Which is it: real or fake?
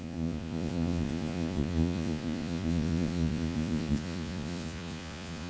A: fake